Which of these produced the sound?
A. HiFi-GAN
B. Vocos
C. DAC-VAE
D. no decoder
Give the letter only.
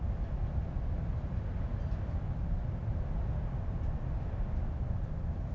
D